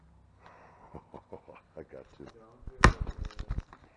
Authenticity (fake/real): real